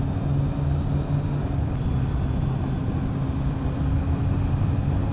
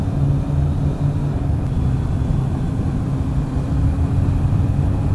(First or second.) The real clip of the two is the first